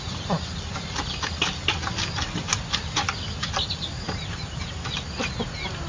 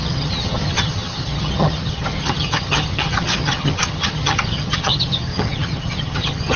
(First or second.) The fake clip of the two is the second